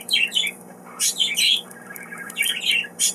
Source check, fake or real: fake